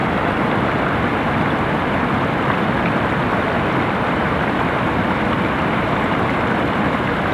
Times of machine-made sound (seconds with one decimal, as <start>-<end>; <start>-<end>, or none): 0.0-7.3

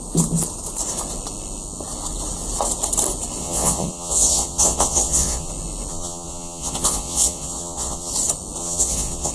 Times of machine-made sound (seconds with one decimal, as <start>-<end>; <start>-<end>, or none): 3.4-5.5; 5.9-8.1; 8.6-9.3